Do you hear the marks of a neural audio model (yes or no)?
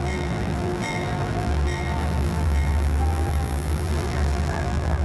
yes